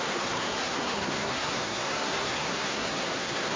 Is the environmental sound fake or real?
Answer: fake